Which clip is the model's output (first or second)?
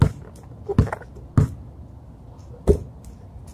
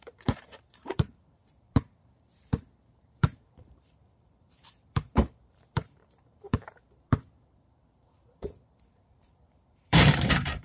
second